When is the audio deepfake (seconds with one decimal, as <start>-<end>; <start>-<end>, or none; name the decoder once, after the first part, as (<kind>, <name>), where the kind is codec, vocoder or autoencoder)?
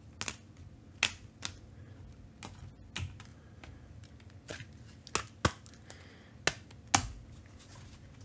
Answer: 3.3-4.1 (vocoder, BigVGAN v2)